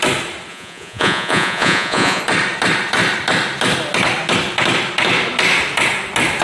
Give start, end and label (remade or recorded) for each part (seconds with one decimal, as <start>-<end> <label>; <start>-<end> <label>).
0.0-0.5 recorded; 0.5-2.2 remade; 2.2-6.4 recorded